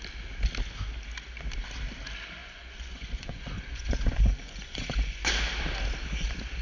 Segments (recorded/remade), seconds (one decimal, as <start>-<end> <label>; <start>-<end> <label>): 0.0-2.4 recorded; 2.4-5.3 remade; 5.3-6.6 recorded

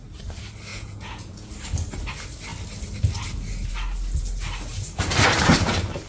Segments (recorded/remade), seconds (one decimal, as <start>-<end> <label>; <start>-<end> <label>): 0.0-0.7 recorded; 0.7-1.5 remade; 1.5-6.1 recorded

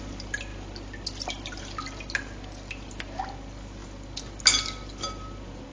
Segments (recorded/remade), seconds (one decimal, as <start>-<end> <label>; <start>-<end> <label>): 0.0-5.7 recorded

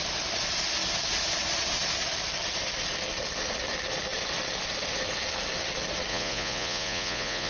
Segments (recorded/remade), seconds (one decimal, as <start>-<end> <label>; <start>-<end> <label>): 0.0-6.1 recorded; 6.1-7.5 remade

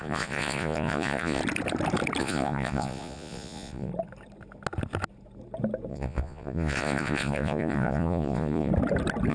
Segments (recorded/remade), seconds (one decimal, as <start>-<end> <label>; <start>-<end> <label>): 0.0-1.4 remade; 1.4-2.2 recorded; 2.2-3.9 remade; 3.9-5.9 recorded; 5.9-8.7 remade; 8.7-9.3 recorded